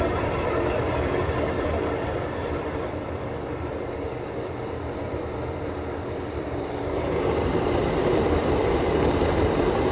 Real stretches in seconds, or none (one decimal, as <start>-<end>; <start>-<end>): none